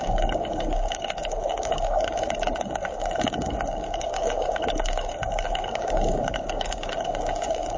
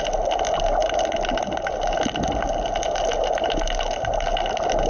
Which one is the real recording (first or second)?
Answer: second